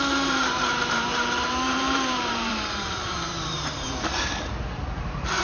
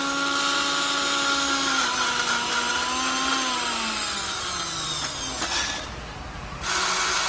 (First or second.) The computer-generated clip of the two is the first